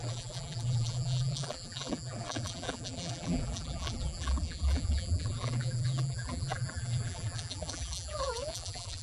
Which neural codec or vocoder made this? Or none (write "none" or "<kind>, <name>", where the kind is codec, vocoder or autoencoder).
vocoder, BigVGAN v2